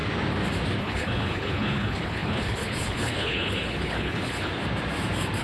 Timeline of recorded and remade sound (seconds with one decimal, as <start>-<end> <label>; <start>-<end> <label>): 0.0-0.8 recorded; 0.8-4.5 remade; 4.5-5.4 recorded